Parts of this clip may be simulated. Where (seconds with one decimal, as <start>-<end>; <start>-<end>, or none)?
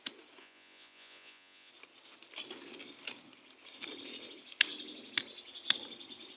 0.4-1.7